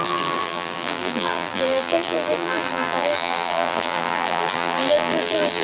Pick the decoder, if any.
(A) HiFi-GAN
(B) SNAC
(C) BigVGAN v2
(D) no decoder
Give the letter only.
C